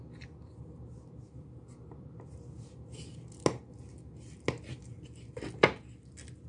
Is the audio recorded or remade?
recorded